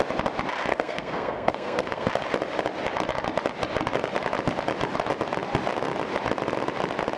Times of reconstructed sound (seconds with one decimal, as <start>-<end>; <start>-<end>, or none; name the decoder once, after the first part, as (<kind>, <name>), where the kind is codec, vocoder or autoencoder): 0.7-2.1 (codec, SNAC)